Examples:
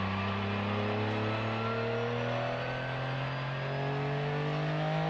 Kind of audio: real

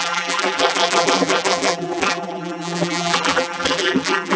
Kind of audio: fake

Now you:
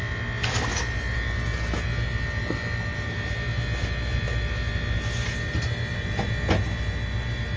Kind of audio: real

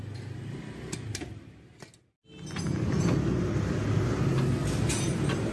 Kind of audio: real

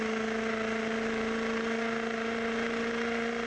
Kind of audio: real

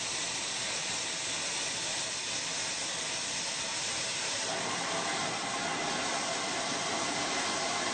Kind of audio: real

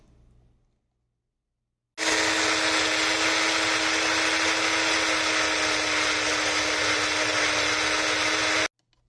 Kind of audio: real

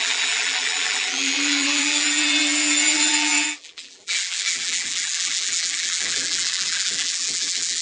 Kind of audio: fake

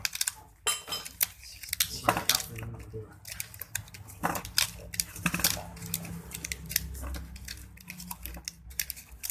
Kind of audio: real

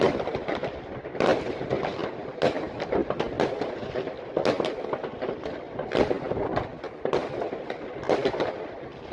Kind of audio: real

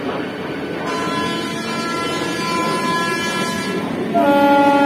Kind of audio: real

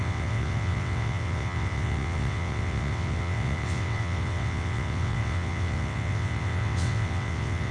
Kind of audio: fake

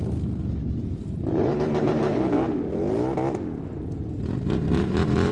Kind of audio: real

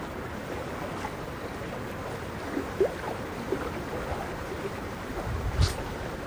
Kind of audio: real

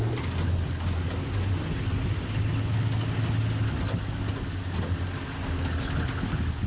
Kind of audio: real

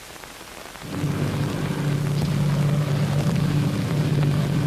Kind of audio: real